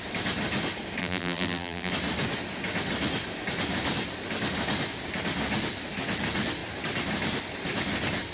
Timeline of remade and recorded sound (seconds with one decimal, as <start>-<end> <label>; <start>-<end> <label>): 0.0-1.0 recorded; 1.0-1.9 remade; 1.9-8.3 recorded